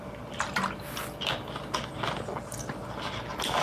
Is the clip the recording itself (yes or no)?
yes